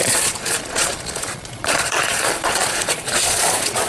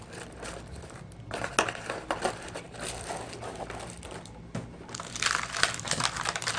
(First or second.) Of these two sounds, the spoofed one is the first